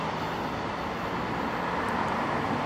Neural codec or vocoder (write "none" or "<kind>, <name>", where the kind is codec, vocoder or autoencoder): none